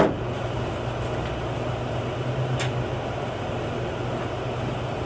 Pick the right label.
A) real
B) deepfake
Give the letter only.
A